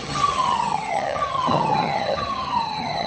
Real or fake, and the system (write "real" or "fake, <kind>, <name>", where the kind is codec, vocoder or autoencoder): fake, vocoder, HiFi-GAN